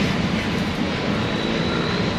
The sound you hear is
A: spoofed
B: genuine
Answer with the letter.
B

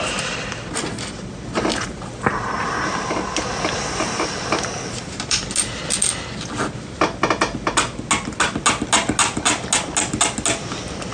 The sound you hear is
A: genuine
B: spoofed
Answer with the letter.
A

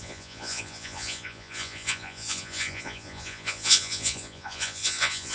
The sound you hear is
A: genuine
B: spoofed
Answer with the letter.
B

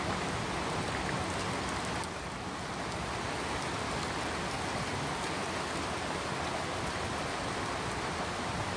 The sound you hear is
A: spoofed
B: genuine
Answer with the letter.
B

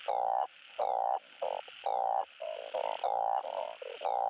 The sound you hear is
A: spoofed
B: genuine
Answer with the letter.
B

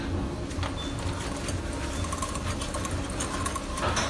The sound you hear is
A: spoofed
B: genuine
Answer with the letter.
B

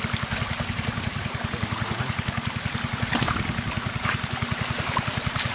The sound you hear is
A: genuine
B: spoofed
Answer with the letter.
A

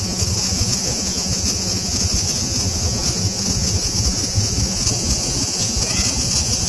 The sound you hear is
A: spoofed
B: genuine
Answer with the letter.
A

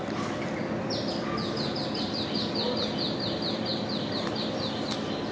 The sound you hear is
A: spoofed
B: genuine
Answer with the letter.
B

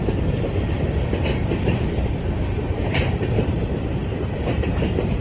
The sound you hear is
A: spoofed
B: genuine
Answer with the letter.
A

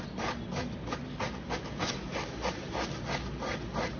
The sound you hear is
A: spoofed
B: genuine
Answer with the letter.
B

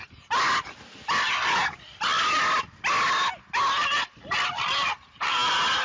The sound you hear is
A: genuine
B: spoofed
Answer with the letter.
A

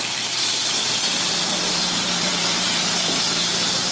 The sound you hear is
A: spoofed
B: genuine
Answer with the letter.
A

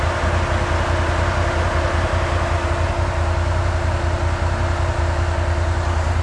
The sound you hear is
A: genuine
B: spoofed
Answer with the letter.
A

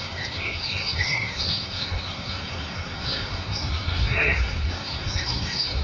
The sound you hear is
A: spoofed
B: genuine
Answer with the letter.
A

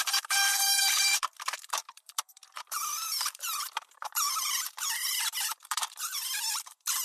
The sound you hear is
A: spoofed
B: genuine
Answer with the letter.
A